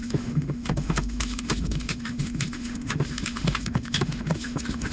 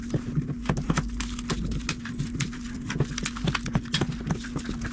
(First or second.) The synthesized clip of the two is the first